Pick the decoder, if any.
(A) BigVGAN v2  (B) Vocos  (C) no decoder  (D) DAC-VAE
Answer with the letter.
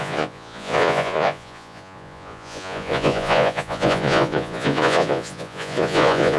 B